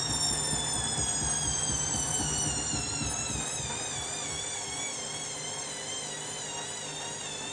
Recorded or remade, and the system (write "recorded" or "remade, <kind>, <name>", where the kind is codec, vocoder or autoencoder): recorded